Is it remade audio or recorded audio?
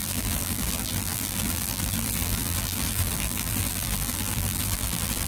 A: remade